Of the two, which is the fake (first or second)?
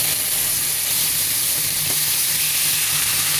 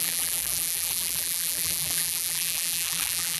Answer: second